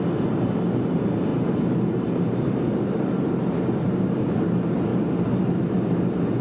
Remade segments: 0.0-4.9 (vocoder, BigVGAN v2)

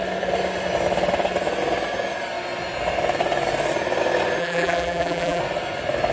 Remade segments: 4.4-5.4 (vocoder, BigVGAN v2)

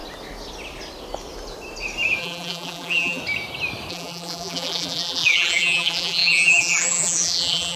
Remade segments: 2.2-3.2 (vocoder, BigVGAN v2); 3.9-7.8

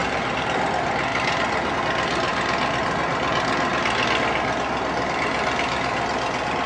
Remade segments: 0.0-0.6 (vocoder, BigVGAN v2); 1.1-1.8

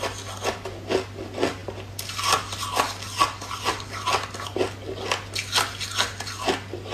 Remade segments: none

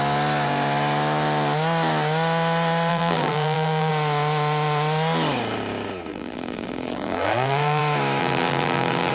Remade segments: 2.9-3.9 (vocoder, BigVGAN v2); 6.1-7.8; 8.2-9.1

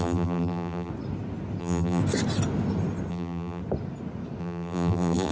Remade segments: 0.0-0.9 (vocoder, BigVGAN v2); 1.6-2.0; 3.1-3.6; 4.4-5.3